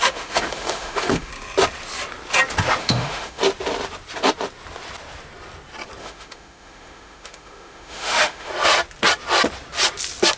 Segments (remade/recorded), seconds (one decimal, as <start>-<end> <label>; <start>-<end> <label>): 0.0-1.3 remade; 1.3-2.8 recorded; 2.8-3.4 remade; 3.4-6.0 recorded; 6.0-8.5 remade; 8.5-10.4 recorded